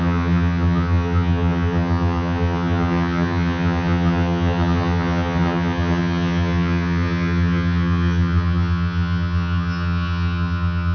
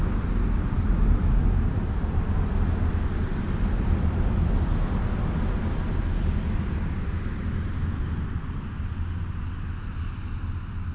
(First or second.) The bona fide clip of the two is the second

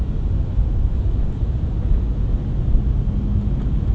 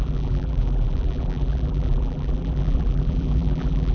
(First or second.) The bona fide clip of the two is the first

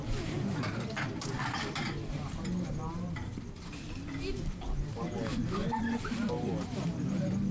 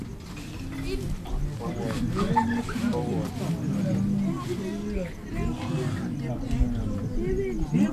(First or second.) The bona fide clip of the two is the second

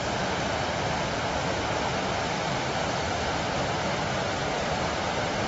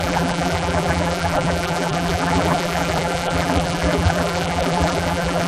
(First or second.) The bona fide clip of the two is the first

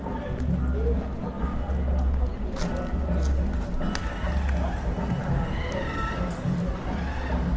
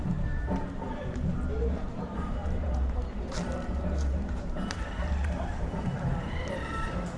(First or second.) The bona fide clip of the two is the first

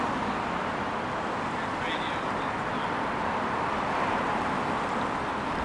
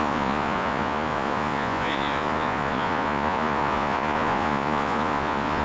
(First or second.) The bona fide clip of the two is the first